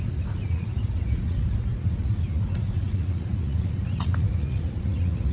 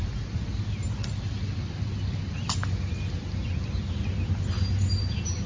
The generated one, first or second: first